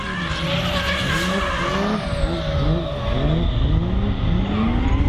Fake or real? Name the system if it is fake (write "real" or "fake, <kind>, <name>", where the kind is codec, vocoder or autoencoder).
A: real